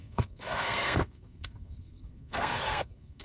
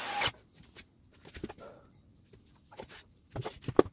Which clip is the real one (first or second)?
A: second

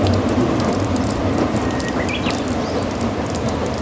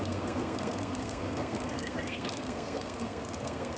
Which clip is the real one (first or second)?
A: first